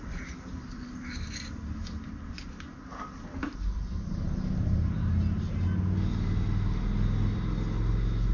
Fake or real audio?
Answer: real